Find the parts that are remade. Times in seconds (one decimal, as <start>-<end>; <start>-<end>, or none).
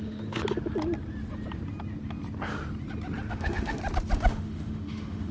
0.0-0.4; 3.3-3.8; 4.3-5.3